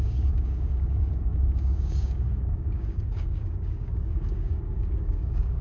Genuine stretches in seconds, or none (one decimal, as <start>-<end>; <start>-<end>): none